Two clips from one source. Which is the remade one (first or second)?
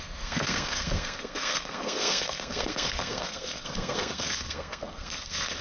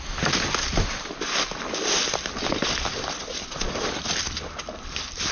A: first